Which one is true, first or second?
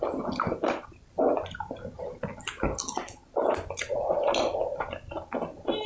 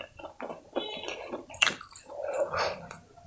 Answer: first